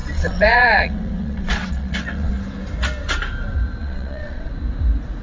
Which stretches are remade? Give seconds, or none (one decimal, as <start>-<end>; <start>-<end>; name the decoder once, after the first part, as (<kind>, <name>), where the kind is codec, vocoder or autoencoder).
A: 0.0-2.3 (vocoder, WaveNeXt); 3.8-4.5